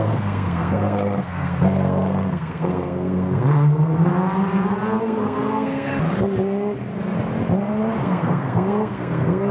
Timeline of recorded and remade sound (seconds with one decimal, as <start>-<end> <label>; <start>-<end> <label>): 0.0-4.1 remade; 4.1-5.0 recorded; 5.0-5.9 remade; 5.9-8.0 recorded; 8.0-9.5 remade